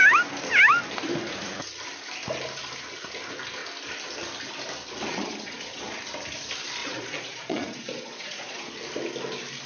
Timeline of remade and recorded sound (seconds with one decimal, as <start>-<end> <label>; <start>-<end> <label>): 0.0-5.1 recorded; 5.1-6.0 remade; 6.0-6.8 recorded; 6.8-8.7 remade; 8.7-9.7 recorded